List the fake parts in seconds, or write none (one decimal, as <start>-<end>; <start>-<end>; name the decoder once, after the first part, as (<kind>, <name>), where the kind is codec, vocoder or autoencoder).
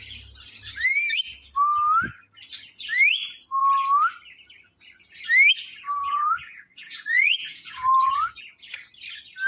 6.0-8.4 (vocoder, Vocos)